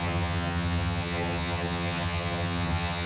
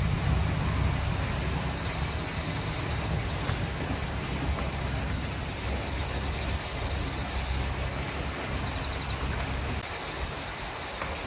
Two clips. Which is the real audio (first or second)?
second